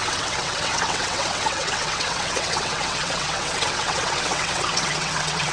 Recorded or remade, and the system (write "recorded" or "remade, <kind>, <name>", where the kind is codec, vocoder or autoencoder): remade, vocoder, WaveNeXt